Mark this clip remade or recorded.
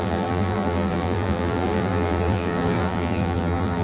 remade